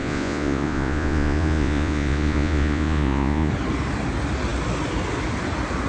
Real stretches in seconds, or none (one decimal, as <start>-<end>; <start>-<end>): 3.5-5.9